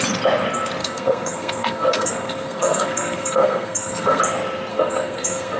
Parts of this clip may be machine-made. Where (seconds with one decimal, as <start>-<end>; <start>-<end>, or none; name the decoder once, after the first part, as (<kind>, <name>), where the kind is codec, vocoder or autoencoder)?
0.8-4.2 (codec, SNAC); 4.7-5.6